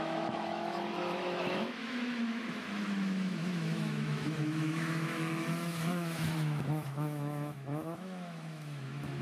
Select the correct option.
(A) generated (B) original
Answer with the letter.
A